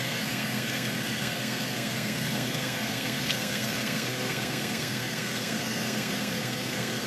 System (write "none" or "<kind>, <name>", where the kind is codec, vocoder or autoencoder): codec, SNAC